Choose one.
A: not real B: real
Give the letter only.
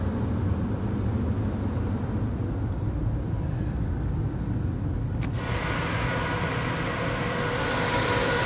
B